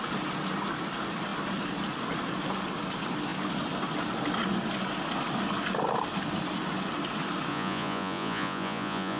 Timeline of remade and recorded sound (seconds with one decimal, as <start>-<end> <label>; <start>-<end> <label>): 0.0-7.5 recorded; 7.5-9.2 remade